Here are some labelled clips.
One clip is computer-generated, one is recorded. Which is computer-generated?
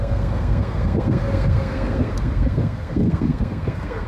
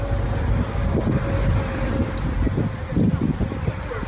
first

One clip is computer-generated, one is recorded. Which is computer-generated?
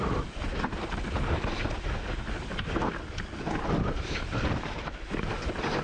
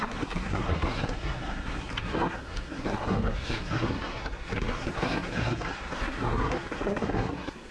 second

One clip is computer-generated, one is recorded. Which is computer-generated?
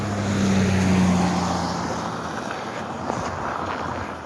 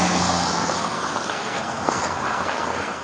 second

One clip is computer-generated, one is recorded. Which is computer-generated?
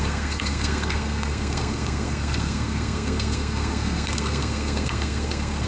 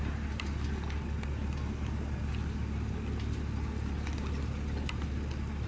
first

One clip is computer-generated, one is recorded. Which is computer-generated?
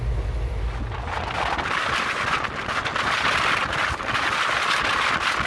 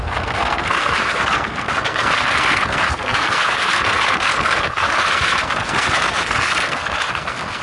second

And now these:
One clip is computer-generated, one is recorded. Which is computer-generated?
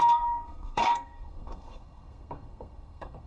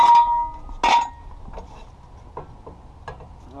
first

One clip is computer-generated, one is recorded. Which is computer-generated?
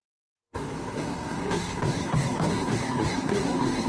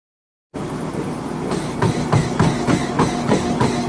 first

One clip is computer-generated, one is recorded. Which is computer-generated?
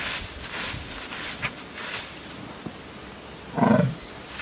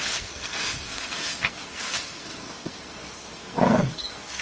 second